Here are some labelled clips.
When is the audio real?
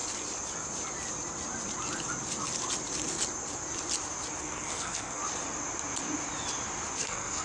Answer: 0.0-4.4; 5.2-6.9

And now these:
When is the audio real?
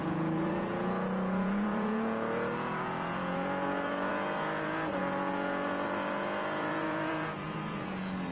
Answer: none